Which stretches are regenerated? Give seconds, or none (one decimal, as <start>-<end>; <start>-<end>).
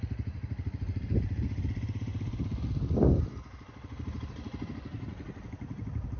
none